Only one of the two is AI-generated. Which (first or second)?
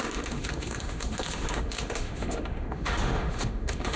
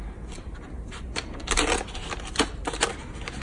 first